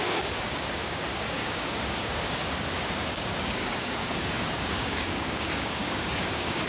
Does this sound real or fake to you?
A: fake